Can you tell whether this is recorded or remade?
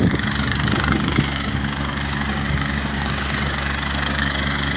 remade